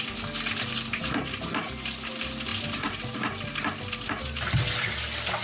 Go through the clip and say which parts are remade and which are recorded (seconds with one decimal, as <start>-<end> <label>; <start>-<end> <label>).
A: 0.0-5.4 recorded